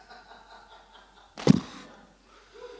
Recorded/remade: recorded